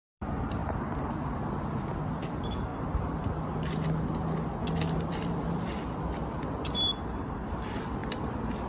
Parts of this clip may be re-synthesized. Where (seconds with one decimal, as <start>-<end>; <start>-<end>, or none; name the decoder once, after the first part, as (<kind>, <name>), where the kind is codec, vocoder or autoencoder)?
0.0-2.7 (vocoder, BigVGAN v2); 5.1-6.9; 7.6-8.0